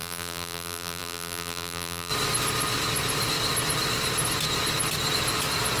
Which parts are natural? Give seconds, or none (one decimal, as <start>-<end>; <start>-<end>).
2.1-5.8